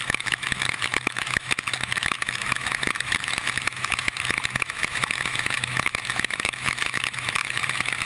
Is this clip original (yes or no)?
no